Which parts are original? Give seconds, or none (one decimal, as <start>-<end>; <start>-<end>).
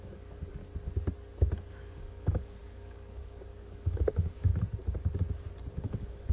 0.6-1.7; 4.5-5.7